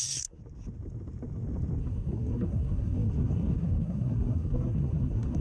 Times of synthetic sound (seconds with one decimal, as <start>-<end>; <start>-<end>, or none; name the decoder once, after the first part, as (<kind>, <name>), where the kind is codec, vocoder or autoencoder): 0.0-0.4 (codec, SNAC); 1.8-5.4